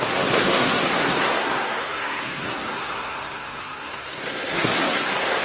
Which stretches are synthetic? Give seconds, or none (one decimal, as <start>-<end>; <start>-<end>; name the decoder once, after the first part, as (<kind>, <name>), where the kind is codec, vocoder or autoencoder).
0.0-5.4 (codec, SNAC)